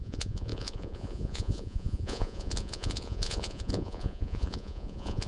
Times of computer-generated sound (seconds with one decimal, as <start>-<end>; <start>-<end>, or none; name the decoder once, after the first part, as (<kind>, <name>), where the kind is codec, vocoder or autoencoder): 0.0-5.3 (vocoder, Vocos)